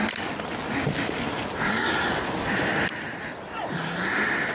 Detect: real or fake real